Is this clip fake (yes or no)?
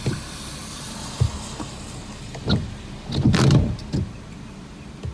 no